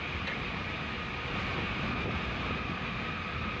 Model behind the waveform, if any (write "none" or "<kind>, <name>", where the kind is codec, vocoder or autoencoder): none